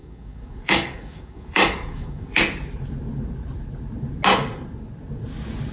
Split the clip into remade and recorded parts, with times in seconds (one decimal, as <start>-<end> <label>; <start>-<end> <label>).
0.0-2.4 remade; 2.4-5.7 recorded